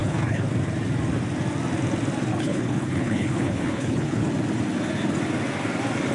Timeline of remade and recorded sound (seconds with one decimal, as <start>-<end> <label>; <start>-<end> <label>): 0.0-0.5 remade; 0.5-2.3 recorded; 2.3-4.3 remade; 4.3-6.1 recorded

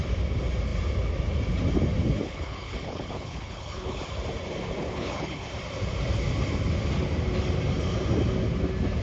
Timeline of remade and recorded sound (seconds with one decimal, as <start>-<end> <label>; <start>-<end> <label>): 0.0-2.0 recorded; 2.0-4.0 remade; 4.0-4.8 recorded; 4.8-5.5 remade; 5.5-9.0 recorded

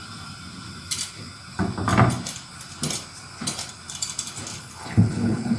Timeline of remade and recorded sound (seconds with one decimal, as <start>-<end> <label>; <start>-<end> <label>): 0.0-4.5 recorded; 4.5-5.6 remade

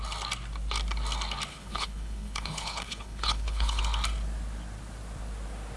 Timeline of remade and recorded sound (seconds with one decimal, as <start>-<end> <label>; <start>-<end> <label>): 0.0-1.5 recorded; 1.5-3.8 remade; 3.8-5.8 recorded

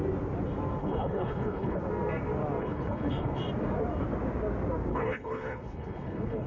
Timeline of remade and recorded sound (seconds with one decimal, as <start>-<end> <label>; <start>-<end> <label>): 0.0-0.8 recorded; 0.8-1.8 remade; 1.8-2.6 recorded; 2.6-3.4 remade; 3.4-4.9 recorded; 4.9-6.5 remade